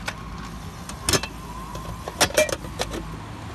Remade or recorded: recorded